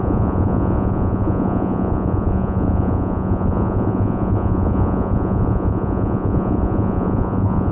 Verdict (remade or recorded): remade